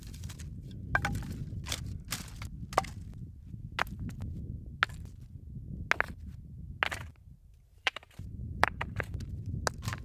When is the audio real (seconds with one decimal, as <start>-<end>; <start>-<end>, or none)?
0.0-7.1; 9.1-10.0